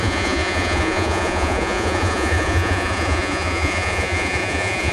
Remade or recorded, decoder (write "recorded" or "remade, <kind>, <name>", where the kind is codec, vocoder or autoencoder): remade, vocoder, Vocos